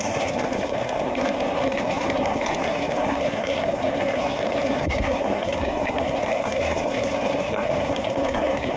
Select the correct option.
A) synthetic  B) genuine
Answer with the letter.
A